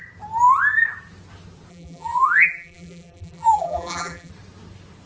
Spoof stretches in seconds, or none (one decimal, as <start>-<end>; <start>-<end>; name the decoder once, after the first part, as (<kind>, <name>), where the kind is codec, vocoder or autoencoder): 1.7-4.3 (vocoder, BigVGAN v2)